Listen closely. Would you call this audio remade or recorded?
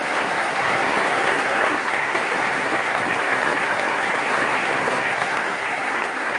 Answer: remade